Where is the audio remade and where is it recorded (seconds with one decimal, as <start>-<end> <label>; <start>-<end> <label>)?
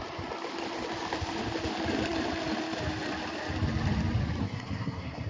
0.0-4.4 recorded; 4.4-5.3 remade